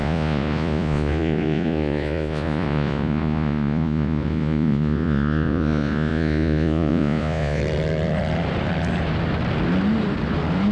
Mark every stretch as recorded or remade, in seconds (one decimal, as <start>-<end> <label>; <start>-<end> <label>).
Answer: 0.0-7.6 remade; 7.6-10.7 recorded